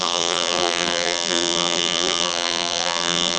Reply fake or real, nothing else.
fake